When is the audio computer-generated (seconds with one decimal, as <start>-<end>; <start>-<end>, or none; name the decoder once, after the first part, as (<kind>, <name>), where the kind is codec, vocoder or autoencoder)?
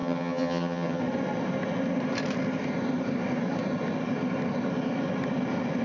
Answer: 0.0-1.0 (vocoder, HiFi-GAN)